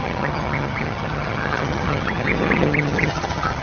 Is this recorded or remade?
remade